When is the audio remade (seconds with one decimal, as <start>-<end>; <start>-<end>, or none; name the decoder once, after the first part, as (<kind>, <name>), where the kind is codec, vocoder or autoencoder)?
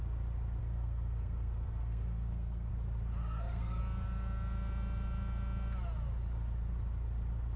0.6-2.7 (codec, SNAC); 3.2-3.8